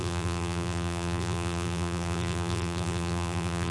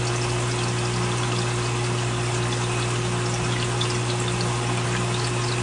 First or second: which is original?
second